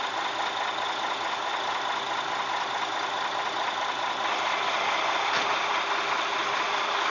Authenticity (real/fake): real